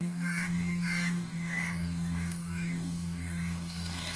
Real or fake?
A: fake